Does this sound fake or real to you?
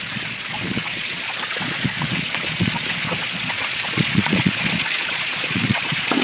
fake